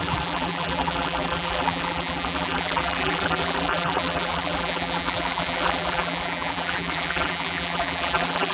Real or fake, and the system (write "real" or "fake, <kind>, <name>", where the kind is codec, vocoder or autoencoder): fake, vocoder, BigVGAN v2